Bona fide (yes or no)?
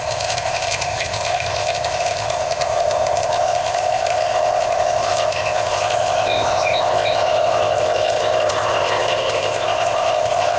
no